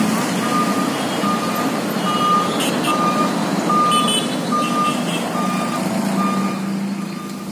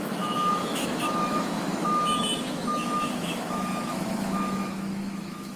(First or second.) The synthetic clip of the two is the second